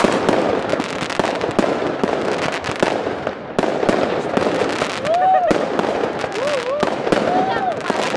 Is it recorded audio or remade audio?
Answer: recorded